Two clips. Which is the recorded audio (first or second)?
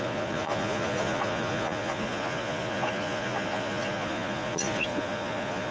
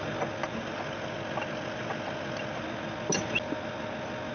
second